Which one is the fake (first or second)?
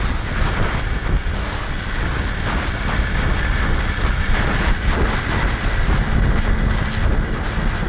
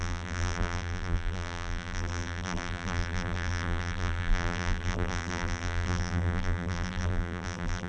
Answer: second